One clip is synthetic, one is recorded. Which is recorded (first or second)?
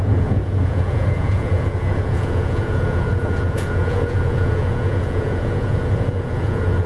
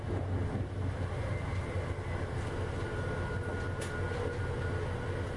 second